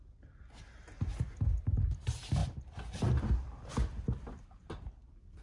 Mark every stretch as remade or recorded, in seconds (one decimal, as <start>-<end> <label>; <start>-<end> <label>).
0.0-5.4 recorded